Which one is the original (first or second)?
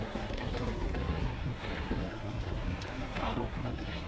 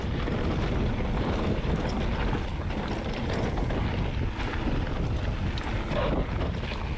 second